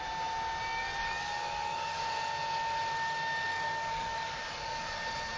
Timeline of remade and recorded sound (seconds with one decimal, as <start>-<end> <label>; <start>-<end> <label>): 0.0-1.0 recorded; 1.0-2.0 remade; 2.0-3.5 recorded; 3.5-5.0 remade; 5.0-5.4 recorded